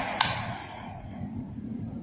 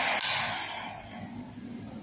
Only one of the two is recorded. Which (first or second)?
second